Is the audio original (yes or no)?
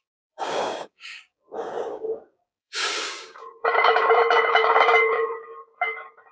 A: no